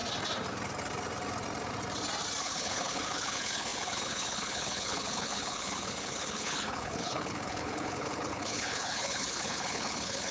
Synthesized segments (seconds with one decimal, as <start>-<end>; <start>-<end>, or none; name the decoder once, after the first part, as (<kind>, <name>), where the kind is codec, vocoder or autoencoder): 2.4-10.3 (codec, HILCodec)